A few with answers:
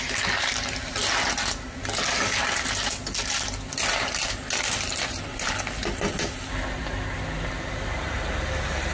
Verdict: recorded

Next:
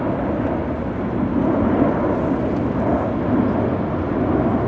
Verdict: recorded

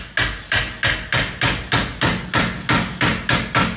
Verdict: recorded